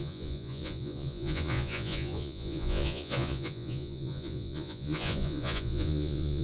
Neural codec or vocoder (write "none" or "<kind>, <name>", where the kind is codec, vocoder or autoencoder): vocoder, Vocos